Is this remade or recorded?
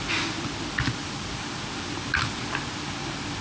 recorded